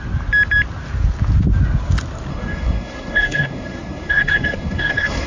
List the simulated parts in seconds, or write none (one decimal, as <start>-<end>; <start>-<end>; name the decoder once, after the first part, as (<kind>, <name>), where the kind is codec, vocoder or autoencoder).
2.3-5.3 (codec, SNAC)